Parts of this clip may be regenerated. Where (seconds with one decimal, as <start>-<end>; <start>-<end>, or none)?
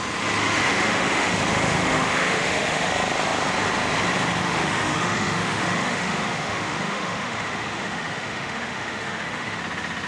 0.4-2.9; 4.4-9.6